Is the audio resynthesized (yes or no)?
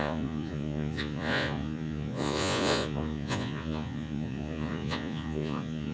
yes